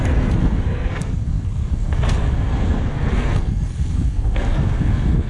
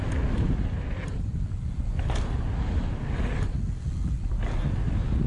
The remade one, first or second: first